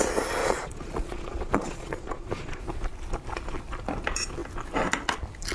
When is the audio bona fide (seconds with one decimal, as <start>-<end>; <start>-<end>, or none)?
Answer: 0.0-0.4; 2.6-5.5